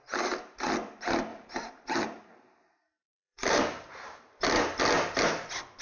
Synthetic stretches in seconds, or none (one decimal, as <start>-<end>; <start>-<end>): 1.3-4.8